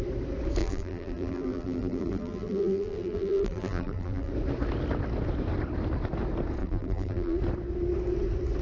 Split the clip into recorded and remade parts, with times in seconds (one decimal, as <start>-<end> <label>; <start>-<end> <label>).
0.0-0.6 recorded; 0.6-4.3 remade; 4.3-6.6 recorded; 6.6-7.4 remade; 7.4-8.6 recorded

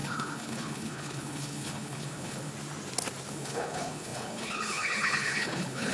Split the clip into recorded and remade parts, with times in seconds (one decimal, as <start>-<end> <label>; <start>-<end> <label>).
0.0-2.5 remade; 2.5-3.3 recorded; 3.3-5.9 remade

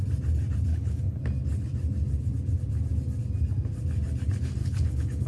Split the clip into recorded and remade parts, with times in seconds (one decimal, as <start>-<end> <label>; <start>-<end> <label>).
0.0-0.7 recorded; 0.7-1.2 remade; 1.2-4.6 recorded; 4.6-5.3 remade

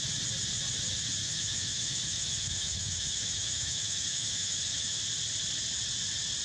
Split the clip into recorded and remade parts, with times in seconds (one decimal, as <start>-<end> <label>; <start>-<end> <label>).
0.0-1.2 recorded; 1.2-5.0 remade; 5.0-6.4 recorded

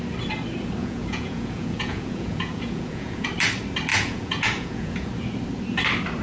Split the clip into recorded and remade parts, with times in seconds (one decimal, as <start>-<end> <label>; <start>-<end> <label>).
0.0-0.8 recorded; 0.8-3.3 remade; 3.3-3.9 recorded; 3.9-5.1 remade; 5.1-6.2 recorded

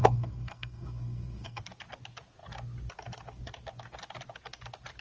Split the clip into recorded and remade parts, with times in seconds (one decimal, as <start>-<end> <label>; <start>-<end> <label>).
0.0-1.6 remade; 1.6-5.0 recorded

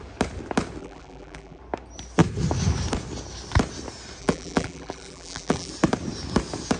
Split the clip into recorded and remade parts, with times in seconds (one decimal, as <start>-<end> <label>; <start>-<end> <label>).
0.0-0.8 recorded; 0.8-1.6 remade; 1.6-4.2 recorded; 4.2-5.7 remade; 5.7-6.8 recorded

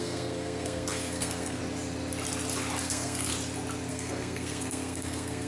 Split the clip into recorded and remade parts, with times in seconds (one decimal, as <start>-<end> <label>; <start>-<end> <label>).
0.0-1.6 remade; 1.6-2.8 recorded; 2.8-3.3 remade; 3.3-3.9 recorded; 3.9-5.5 remade